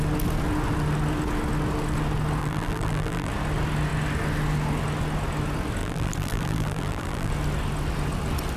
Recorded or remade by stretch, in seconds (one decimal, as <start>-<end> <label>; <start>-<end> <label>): 0.0-2.4 recorded; 2.4-3.3 remade; 3.3-5.8 recorded; 5.8-7.3 remade; 7.3-8.6 recorded